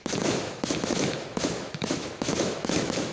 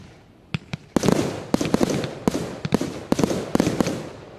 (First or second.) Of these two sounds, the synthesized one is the first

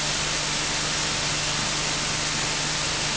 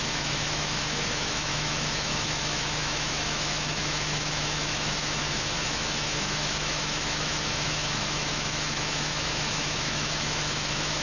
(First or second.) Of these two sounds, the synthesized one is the second